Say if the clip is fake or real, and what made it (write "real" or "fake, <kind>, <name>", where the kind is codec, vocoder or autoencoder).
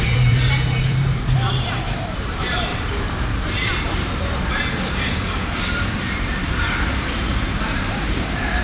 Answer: fake, vocoder, BigVGAN v2